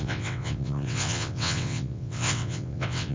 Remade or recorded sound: remade